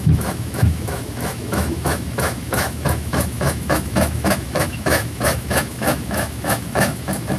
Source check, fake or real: fake